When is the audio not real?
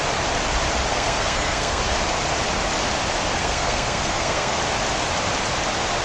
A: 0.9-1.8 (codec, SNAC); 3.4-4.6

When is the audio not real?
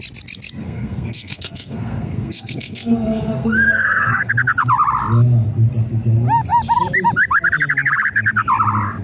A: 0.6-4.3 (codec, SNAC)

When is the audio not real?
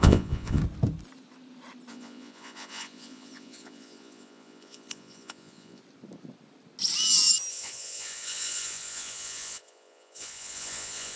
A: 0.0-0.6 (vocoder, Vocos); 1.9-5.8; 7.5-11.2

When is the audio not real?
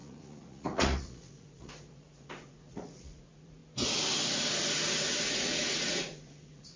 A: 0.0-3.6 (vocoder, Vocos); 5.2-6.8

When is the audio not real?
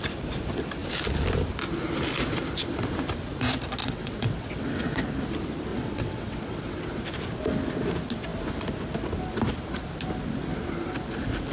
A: 3.8-5.0 (vocoder, WaveNeXt); 5.7-7.0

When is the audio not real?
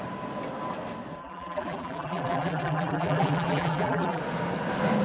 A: 1.2-4.2 (vocoder, BigVGAN v2)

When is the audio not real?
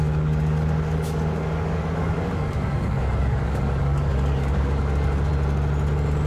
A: 0.0-5.3 (codec, DAC)